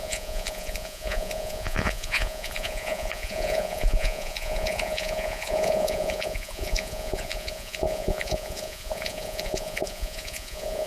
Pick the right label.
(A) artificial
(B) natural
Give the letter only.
A